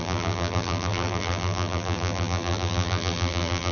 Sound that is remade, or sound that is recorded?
remade